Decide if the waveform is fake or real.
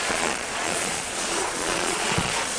fake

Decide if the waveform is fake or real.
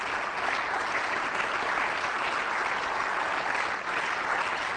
real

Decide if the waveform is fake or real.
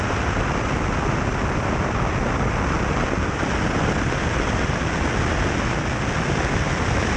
real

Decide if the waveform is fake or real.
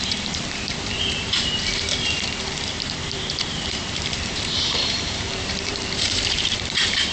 fake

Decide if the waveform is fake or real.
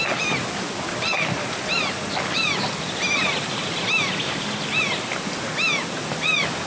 real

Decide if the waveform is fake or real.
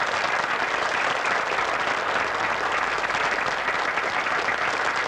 real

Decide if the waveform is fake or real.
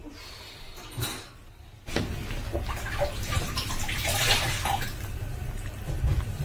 real